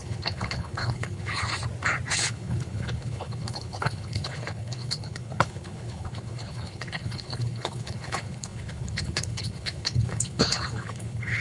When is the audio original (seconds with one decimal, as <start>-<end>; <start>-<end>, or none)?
1.5-2.1